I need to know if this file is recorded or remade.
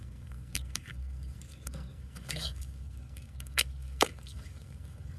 remade